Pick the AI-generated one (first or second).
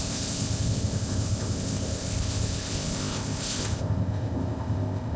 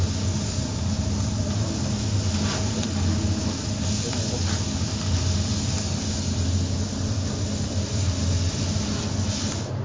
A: first